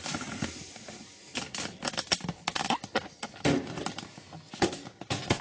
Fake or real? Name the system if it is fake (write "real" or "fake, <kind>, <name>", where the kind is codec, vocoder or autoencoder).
real